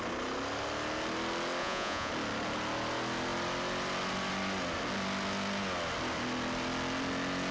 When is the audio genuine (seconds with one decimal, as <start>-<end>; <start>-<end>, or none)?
0.0-1.6; 2.1-7.5